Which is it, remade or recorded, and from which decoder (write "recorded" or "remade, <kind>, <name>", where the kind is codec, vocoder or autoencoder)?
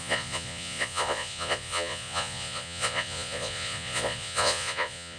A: remade, vocoder, Vocos